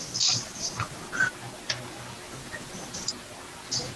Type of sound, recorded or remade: recorded